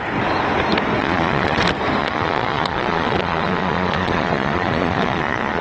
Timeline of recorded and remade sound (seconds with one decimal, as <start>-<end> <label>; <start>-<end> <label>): 0.0-1.0 recorded; 1.0-1.6 remade; 1.6-2.0 recorded; 2.0-5.6 remade